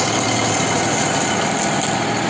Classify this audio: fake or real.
real